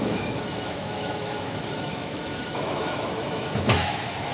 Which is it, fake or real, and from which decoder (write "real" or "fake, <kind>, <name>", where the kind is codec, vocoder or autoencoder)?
fake, autoencoder, DAC-VAE